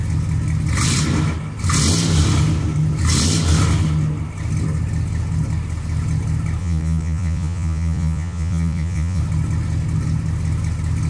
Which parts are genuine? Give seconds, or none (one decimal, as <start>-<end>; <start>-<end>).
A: 0.0-6.6; 9.2-11.1